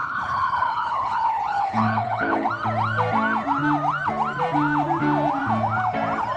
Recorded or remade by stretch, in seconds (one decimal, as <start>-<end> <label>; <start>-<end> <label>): 0.0-2.5 remade; 2.5-6.4 recorded

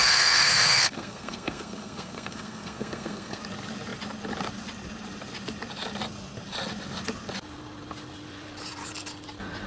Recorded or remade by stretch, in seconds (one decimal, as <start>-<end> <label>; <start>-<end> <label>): 0.0-3.4 remade; 3.4-9.7 recorded

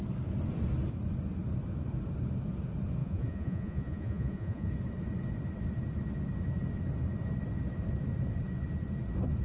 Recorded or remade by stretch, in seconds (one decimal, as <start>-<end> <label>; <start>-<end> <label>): 0.0-3.0 recorded; 3.0-4.7 remade; 4.7-9.4 recorded

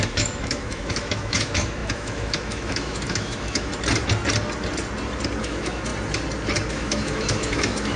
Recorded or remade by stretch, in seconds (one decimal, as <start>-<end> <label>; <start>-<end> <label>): 0.0-3.7 remade; 3.7-5.4 recorded; 5.4-5.9 remade; 5.9-6.7 recorded; 6.7-8.0 remade

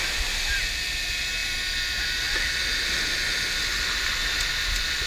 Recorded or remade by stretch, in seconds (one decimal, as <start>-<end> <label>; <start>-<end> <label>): 0.0-5.1 recorded

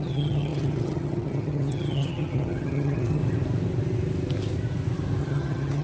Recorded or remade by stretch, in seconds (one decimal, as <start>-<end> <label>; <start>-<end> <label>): 0.0-3.2 remade; 3.2-5.2 recorded; 5.2-5.8 remade

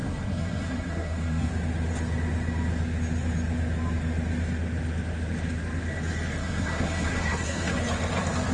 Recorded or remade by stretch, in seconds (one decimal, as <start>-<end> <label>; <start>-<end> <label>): 0.0-1.5 remade; 1.5-6.4 recorded; 6.4-7.8 remade; 7.8-8.5 recorded

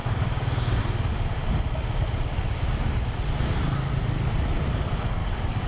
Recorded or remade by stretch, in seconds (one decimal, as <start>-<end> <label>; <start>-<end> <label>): 0.0-0.8 remade; 0.8-5.2 recorded; 5.2-5.7 remade